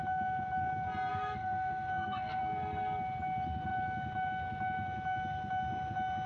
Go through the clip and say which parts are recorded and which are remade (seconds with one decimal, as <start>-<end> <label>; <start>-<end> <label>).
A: 0.0-1.1 recorded; 1.1-2.4 remade; 2.4-6.3 recorded